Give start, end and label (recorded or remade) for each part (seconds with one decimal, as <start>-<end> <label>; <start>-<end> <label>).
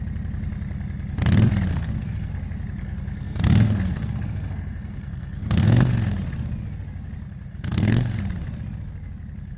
0.0-1.7 recorded; 1.7-2.3 remade; 2.3-2.8 recorded; 2.8-6.1 remade; 6.1-7.5 recorded; 7.5-8.2 remade; 8.2-9.6 recorded